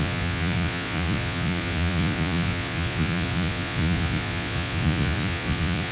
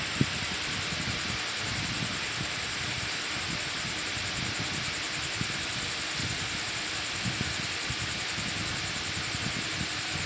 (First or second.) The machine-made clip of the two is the first